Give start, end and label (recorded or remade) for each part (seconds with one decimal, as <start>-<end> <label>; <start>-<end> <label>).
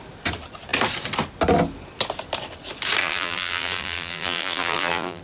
0.0-3.0 recorded; 3.0-5.2 remade